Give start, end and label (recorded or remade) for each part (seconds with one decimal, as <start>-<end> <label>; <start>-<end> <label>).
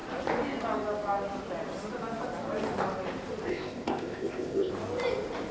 0.0-3.5 recorded; 3.5-4.7 remade; 4.7-5.5 recorded